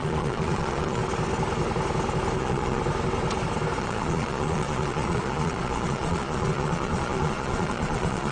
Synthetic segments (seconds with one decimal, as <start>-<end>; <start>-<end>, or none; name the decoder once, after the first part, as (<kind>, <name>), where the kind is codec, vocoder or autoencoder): 0.0-1.0 (vocoder, Vocos); 2.4-2.8; 3.8-8.3